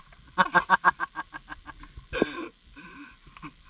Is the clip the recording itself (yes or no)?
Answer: yes